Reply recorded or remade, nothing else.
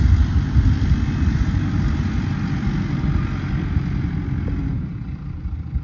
recorded